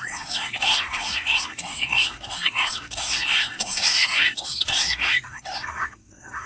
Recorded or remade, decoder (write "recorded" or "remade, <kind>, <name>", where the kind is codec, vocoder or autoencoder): remade, codec, SNAC